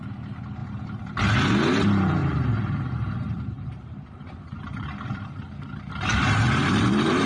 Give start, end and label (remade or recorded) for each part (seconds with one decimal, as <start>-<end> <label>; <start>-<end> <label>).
0.0-2.2 recorded; 2.2-5.1 remade; 5.1-6.1 recorded; 6.1-7.3 remade